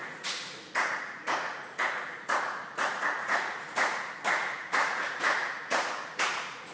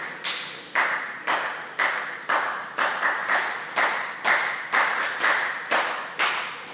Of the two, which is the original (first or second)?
second